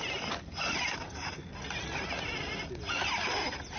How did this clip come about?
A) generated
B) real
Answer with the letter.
B